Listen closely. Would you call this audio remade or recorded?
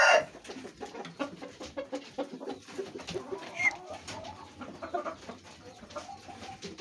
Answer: recorded